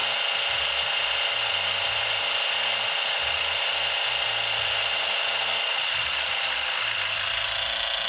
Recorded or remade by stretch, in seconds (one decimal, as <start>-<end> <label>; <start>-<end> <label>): 0.0-8.1 recorded